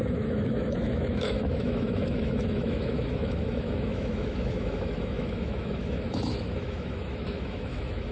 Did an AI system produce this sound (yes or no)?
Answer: yes